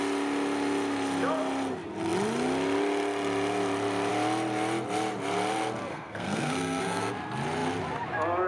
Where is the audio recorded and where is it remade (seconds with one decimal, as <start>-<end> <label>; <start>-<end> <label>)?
0.0-5.9 recorded; 5.9-7.1 remade; 7.1-8.5 recorded